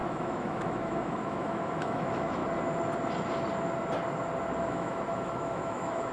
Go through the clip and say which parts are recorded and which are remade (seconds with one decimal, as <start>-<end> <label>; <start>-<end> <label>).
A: 0.0-2.4 remade; 2.4-4.6 recorded; 4.6-6.1 remade